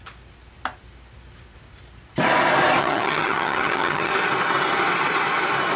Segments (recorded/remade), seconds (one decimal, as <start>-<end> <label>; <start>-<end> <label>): 0.0-2.8 recorded; 2.8-4.1 remade; 4.1-5.8 recorded